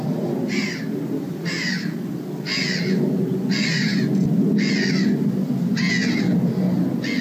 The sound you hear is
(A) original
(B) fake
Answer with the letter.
A